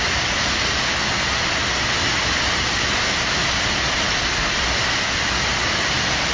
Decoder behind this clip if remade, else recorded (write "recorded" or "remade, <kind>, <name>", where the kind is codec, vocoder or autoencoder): recorded